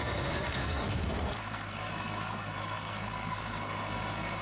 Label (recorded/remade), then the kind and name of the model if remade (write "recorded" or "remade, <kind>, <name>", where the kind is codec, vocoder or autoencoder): remade, codec, SNAC